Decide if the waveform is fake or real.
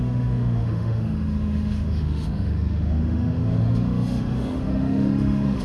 fake